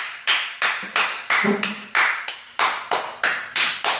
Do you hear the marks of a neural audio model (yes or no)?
yes